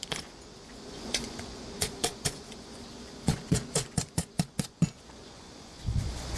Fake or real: fake